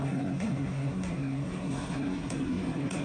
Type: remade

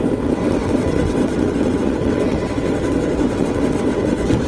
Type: remade